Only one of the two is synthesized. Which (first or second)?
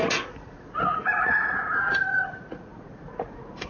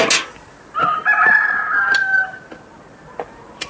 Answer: first